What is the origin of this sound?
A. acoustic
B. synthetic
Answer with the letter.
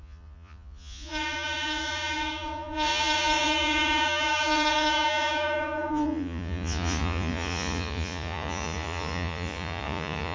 B